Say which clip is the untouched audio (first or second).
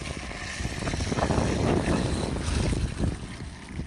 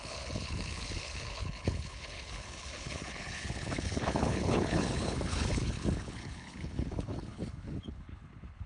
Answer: first